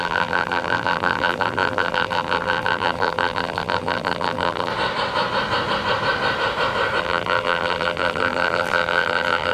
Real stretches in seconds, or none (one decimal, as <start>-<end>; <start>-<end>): 4.7-7.0